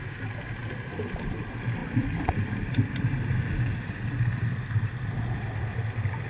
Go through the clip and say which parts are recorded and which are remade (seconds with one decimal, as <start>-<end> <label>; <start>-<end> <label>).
0.0-0.6 recorded; 0.6-1.2 remade; 1.2-1.8 recorded; 1.8-4.5 remade; 4.5-6.3 recorded